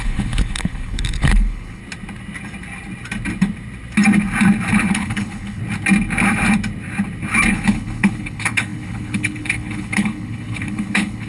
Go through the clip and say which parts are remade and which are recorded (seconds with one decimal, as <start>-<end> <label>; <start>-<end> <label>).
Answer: 0.0-1.8 remade; 1.8-4.9 recorded; 4.9-5.6 remade; 5.6-7.5 recorded; 7.5-11.3 remade